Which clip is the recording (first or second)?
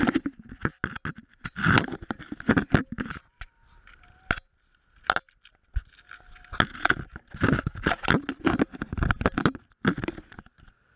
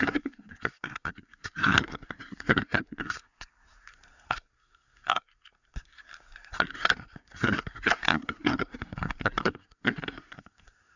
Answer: first